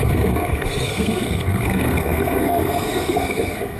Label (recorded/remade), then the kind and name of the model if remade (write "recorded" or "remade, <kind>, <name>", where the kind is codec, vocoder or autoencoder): remade, codec, SNAC